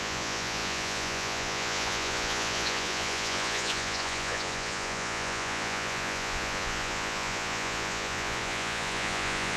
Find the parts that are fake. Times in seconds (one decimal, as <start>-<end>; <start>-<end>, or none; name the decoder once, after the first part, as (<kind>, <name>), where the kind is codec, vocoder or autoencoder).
0.0-9.6 (vocoder, Vocos)